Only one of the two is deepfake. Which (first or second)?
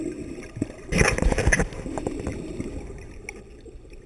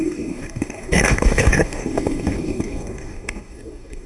second